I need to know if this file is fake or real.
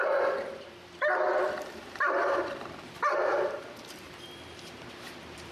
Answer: fake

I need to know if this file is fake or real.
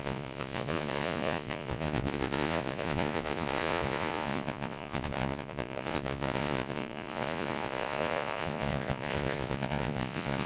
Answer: fake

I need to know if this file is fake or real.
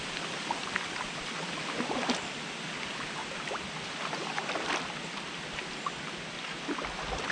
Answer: real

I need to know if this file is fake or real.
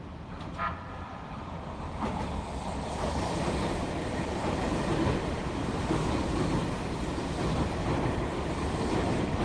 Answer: real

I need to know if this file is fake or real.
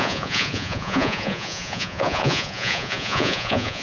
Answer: fake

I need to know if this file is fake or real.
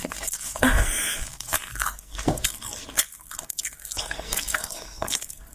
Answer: fake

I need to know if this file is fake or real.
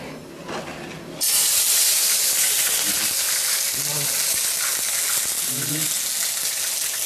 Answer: real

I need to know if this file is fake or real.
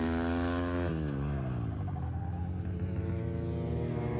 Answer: real